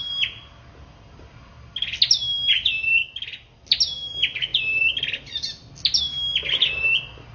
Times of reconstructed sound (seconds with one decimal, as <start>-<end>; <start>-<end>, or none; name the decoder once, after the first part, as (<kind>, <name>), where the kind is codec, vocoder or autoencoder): none